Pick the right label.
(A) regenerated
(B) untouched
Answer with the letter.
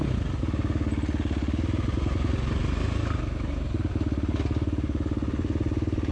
B